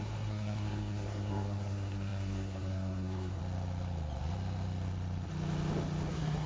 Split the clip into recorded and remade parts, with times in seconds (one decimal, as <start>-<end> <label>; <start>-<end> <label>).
0.0-3.4 remade; 3.4-6.1 recorded; 6.1-6.5 remade